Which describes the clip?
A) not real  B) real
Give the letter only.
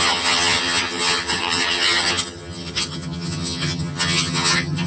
A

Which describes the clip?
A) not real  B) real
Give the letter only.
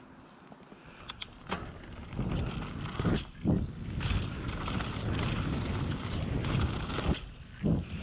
B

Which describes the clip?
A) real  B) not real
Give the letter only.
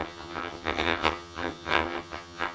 B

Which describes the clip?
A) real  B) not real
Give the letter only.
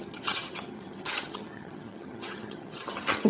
B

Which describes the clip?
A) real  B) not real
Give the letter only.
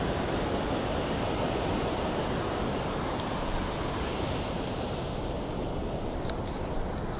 A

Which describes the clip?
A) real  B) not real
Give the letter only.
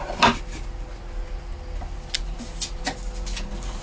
A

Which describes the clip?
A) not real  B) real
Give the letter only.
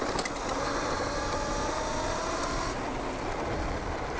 B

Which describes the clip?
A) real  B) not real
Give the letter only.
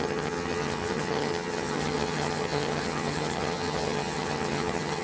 B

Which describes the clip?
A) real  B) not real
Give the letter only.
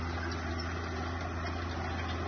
A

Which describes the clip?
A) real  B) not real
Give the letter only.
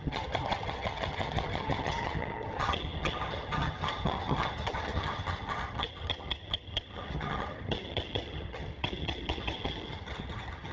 B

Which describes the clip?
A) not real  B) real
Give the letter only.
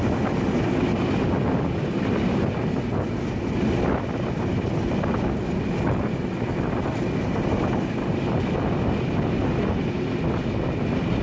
B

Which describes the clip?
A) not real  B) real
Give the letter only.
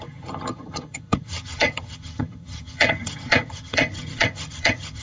A